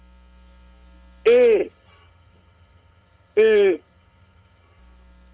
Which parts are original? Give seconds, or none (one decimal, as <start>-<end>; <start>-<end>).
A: 0.0-1.6; 4.8-5.3